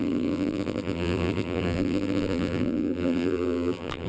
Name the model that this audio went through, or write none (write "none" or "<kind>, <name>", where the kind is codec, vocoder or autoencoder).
vocoder, BigVGAN v2